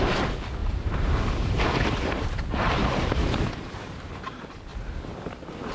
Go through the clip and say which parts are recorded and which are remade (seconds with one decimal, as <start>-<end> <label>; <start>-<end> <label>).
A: 0.0-0.6 recorded; 0.6-1.6 remade; 1.6-5.7 recorded